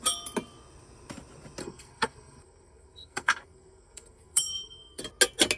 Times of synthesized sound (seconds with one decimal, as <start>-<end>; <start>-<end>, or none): 1.6-5.0